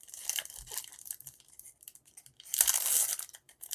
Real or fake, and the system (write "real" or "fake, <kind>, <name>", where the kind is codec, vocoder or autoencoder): fake, vocoder, BigVGAN v2